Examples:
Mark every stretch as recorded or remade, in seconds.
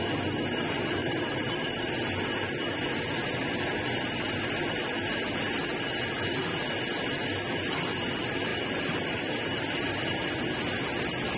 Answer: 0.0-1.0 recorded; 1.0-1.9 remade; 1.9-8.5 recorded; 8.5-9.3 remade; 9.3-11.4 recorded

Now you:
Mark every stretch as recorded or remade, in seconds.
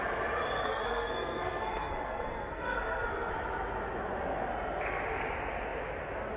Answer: 0.0-0.6 recorded; 0.6-3.3 remade; 3.3-6.4 recorded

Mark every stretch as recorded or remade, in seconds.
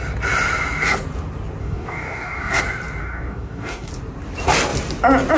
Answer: 0.0-1.6 recorded; 1.6-2.6 remade; 2.6-3.0 recorded; 3.0-3.9 remade; 3.9-5.4 recorded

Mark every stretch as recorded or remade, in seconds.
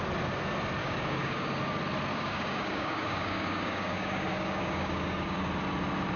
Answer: 0.0-0.8 recorded; 0.8-1.6 remade; 1.6-2.1 recorded; 2.1-5.4 remade; 5.4-6.2 recorded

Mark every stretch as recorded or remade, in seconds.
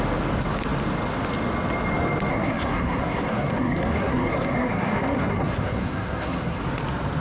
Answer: 0.0-2.3 recorded; 2.3-6.6 remade; 6.6-7.2 recorded